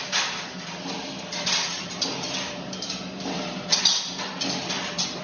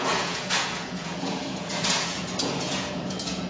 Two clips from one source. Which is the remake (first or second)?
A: second